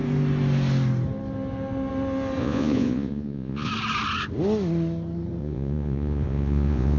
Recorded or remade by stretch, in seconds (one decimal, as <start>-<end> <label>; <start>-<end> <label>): 0.0-2.4 recorded; 2.4-3.7 remade; 3.7-5.4 recorded; 5.4-7.0 remade